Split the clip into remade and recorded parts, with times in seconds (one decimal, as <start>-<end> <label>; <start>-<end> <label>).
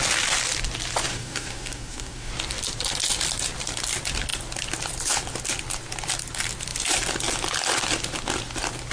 0.0-1.1 recorded; 1.1-2.3 remade; 2.3-8.9 recorded